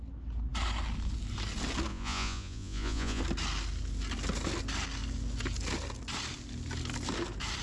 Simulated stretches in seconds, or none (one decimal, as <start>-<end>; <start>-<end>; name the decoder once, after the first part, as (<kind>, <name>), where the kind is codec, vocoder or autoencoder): 1.9-3.2 (vocoder, Vocos)